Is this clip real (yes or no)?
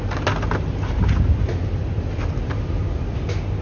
yes